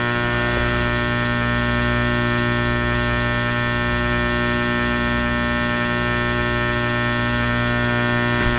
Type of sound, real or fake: real